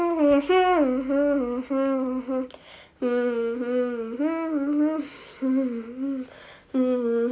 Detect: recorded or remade recorded